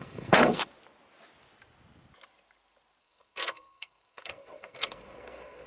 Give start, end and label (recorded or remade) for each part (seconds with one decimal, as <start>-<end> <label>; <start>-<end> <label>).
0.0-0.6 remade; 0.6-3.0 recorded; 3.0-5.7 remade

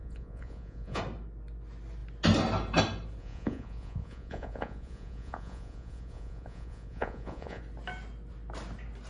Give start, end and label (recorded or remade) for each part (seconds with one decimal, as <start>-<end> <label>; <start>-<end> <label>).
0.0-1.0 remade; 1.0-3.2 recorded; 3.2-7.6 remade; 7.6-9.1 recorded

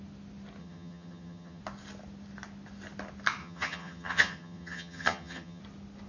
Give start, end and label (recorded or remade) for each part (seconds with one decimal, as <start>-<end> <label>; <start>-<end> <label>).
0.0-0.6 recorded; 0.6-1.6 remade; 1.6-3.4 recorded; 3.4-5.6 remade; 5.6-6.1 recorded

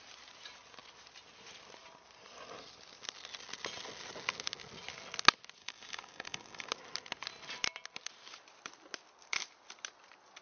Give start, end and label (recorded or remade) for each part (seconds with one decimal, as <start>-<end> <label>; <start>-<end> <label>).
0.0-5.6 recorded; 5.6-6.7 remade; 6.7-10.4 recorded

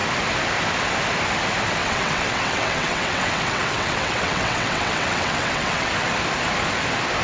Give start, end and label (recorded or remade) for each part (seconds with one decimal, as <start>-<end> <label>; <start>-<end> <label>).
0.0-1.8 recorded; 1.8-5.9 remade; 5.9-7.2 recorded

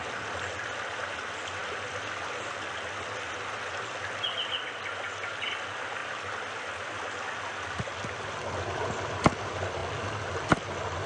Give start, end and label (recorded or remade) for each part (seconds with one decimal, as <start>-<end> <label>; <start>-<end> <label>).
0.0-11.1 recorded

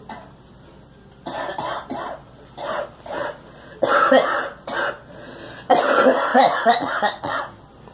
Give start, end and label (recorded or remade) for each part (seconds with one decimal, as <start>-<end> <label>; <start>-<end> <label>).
0.0-6.3 recorded; 6.3-7.4 remade; 7.4-7.9 recorded